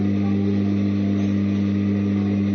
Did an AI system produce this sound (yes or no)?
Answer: no